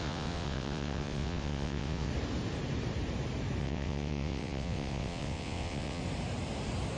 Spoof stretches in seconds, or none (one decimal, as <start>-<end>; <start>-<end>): 0.0-2.1; 3.6-6.0